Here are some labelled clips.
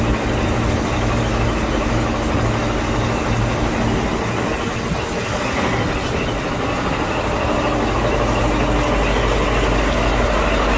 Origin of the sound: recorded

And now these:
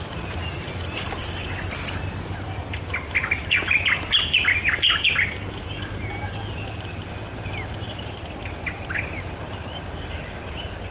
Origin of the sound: recorded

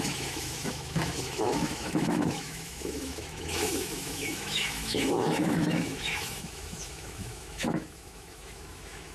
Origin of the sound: remade